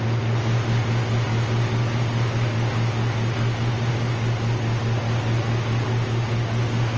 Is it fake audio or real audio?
real